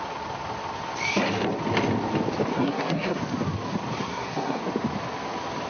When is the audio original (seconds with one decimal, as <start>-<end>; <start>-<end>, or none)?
0.0-2.5; 3.2-4.0; 4.6-5.7